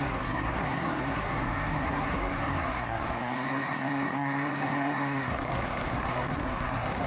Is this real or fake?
fake